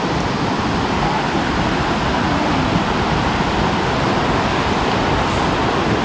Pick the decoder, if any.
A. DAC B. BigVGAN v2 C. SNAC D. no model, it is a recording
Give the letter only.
D